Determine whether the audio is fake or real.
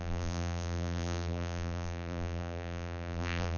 fake